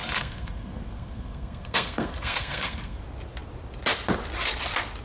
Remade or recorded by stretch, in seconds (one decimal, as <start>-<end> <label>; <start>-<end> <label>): 0.0-3.0 remade; 3.0-5.0 recorded